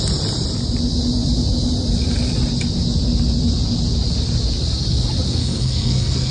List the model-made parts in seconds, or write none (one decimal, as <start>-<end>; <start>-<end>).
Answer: 5.4-6.3